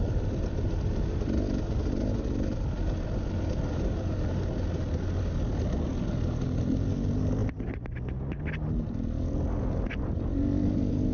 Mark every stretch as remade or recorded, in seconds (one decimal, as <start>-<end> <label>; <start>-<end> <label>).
0.0-11.1 recorded